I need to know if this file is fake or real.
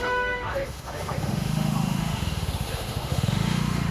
fake